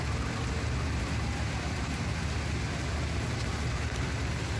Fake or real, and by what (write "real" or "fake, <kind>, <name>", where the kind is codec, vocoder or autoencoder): real